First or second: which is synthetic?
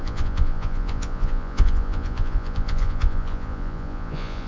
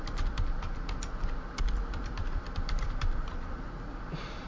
first